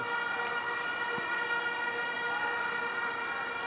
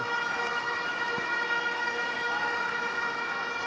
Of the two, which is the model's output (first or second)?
second